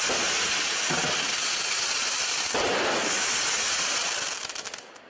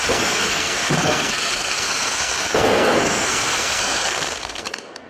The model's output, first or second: second